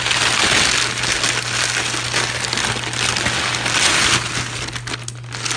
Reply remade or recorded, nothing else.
recorded